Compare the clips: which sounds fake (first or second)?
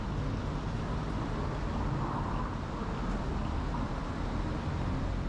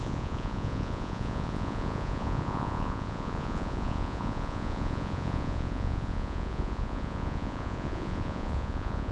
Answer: second